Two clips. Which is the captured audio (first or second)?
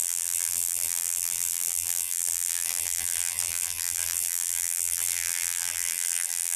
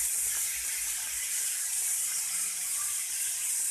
second